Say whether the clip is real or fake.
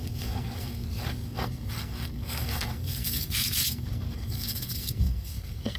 fake